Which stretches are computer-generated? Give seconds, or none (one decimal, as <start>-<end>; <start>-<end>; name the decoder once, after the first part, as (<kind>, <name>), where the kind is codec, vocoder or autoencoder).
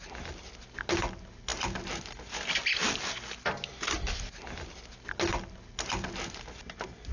none